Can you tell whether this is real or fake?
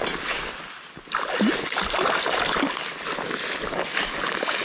real